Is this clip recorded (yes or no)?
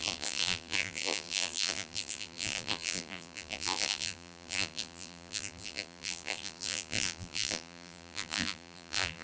no